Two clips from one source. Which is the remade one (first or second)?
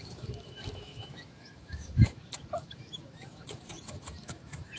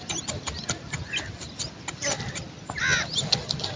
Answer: first